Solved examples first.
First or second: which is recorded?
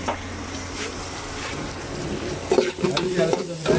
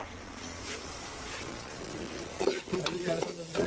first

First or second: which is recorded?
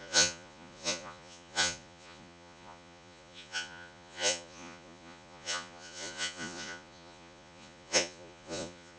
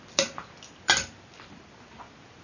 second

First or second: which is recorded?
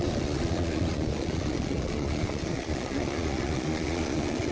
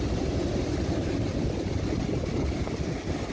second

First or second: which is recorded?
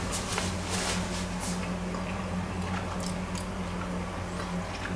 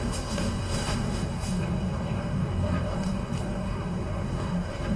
first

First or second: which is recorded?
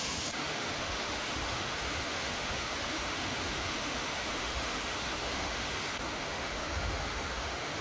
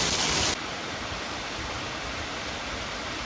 second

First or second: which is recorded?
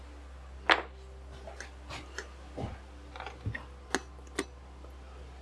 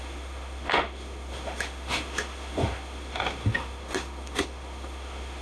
first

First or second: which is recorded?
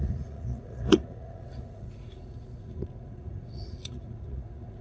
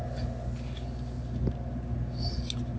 second